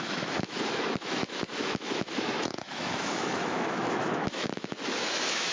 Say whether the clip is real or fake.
fake